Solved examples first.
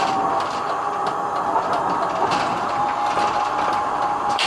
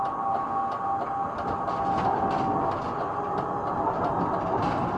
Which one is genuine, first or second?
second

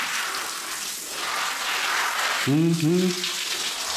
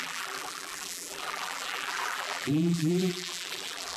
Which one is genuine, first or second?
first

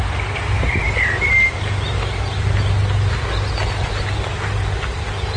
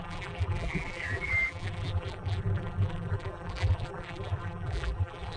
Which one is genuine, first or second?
first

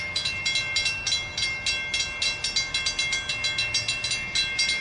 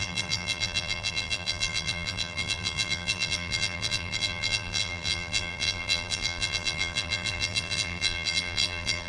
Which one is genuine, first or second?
first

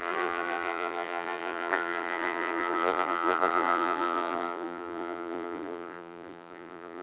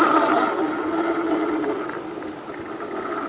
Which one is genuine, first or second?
second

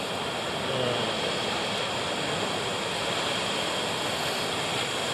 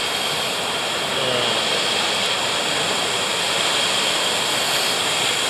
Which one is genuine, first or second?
second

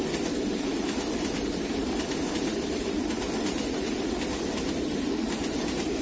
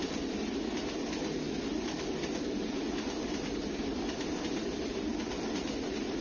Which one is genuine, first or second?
second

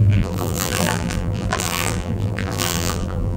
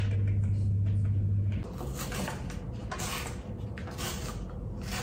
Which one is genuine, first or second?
second